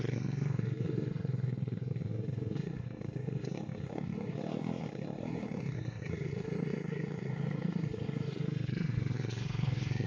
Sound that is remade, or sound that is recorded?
remade